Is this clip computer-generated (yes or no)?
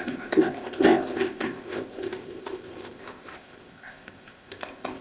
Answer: yes